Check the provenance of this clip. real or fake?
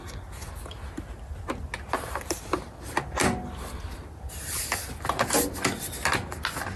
real